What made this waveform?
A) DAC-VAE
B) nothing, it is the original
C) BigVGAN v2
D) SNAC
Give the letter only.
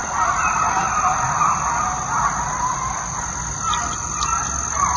B